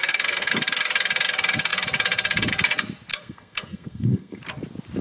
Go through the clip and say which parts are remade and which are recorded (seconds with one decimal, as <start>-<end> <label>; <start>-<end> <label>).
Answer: 0.0-0.5 remade; 0.5-3.1 recorded; 3.1-4.4 remade; 4.4-5.0 recorded